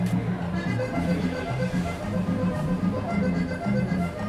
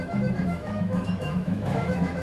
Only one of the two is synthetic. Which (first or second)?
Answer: second